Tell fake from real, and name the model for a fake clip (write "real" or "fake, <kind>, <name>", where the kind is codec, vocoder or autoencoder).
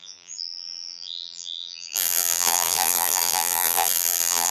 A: fake, vocoder, BigVGAN v2